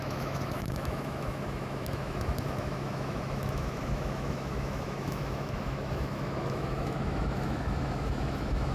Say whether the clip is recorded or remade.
remade